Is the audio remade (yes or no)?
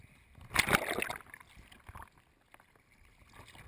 no